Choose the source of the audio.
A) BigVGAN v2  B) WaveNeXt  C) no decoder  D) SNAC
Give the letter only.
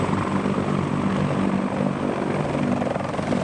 C